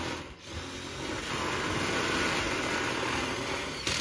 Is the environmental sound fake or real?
real